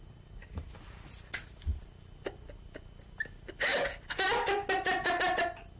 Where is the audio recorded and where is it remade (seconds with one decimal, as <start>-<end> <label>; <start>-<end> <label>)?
0.0-5.8 recorded